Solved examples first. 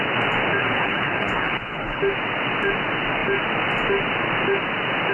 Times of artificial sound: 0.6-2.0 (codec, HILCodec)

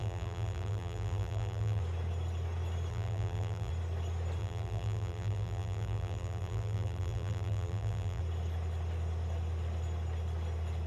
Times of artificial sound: 0.0-1.8 (vocoder, BigVGAN v2); 2.9-3.7; 4.4-8.2

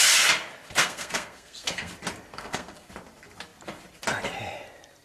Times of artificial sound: 0.8-1.9 (codec, SNAC); 2.3-2.9